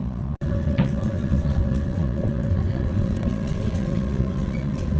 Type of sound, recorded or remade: remade